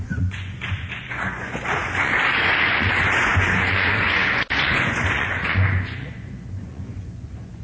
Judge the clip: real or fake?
fake